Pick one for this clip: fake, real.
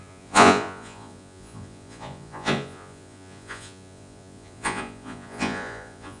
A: fake